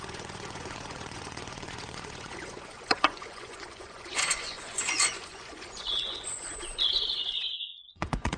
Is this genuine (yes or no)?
no